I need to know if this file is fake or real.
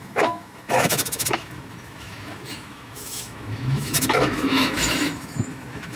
fake